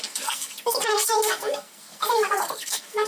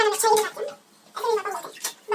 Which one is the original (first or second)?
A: second